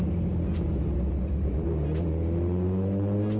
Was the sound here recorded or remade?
recorded